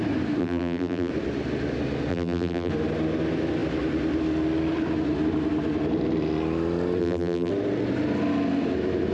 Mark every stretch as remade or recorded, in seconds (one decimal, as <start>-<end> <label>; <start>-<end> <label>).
0.0-0.4 recorded; 0.4-1.1 remade; 1.1-2.1 recorded; 2.1-2.7 remade; 2.7-7.0 recorded; 7.0-7.5 remade; 7.5-9.1 recorded